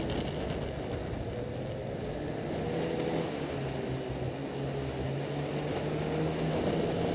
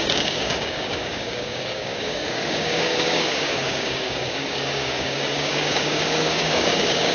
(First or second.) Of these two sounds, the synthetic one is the second